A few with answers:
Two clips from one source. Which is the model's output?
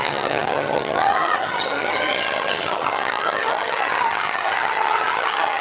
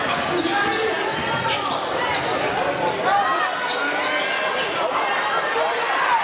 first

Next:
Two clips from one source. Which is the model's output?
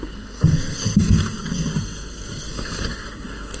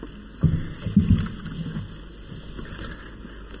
first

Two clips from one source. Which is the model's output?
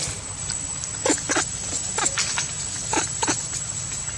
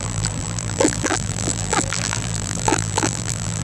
second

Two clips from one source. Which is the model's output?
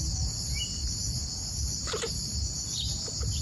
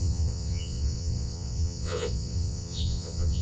second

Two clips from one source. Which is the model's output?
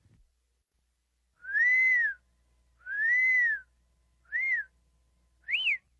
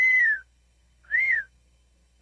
second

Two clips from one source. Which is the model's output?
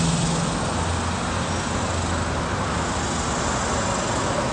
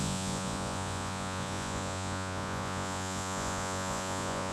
second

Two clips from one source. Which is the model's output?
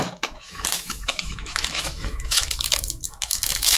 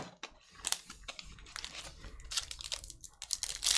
first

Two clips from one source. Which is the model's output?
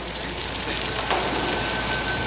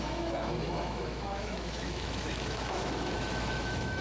second